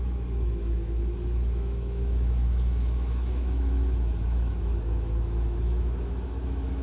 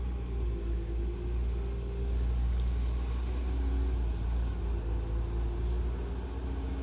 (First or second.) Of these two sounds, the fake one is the first